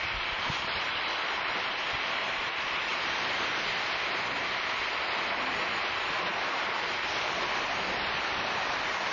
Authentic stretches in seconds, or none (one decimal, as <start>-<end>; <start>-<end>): 0.0-2.9; 3.5-9.1